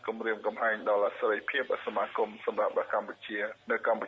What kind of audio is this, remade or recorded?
recorded